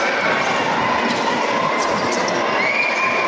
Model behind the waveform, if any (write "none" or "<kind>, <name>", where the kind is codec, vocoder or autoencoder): none